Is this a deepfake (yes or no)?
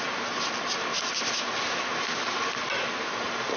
no